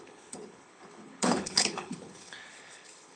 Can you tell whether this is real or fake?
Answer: fake